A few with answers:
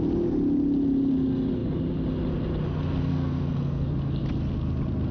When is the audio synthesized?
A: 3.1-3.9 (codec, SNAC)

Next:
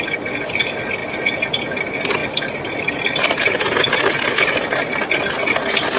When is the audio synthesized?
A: none